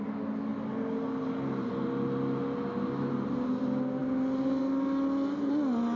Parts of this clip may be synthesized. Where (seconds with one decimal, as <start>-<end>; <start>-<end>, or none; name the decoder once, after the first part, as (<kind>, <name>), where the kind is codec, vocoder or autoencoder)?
none